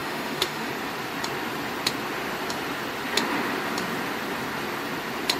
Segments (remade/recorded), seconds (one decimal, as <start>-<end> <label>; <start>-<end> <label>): 0.0-0.7 remade; 0.7-5.4 recorded